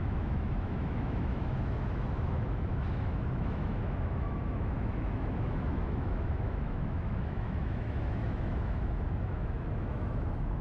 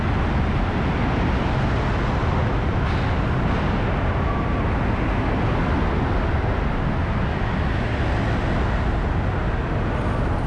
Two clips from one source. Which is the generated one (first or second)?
first